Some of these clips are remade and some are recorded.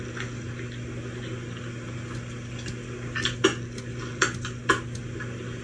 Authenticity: recorded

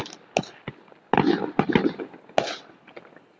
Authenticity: recorded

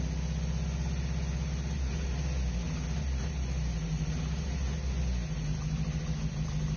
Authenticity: recorded